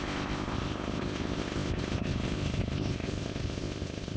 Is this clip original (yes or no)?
no